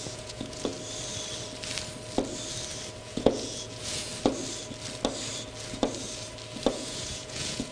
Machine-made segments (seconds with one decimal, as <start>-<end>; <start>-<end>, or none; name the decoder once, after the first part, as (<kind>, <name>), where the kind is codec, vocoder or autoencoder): 0.0-0.7 (vocoder, Vocos); 3.0-4.1; 6.7-7.7